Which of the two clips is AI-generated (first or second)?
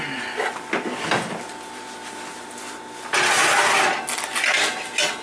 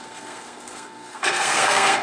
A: second